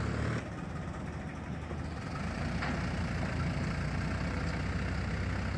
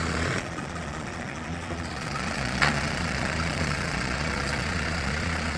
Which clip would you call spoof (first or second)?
second